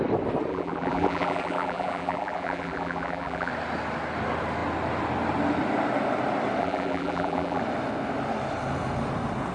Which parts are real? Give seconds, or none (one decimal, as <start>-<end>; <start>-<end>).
0.0-0.5; 3.5-6.6; 7.6-9.5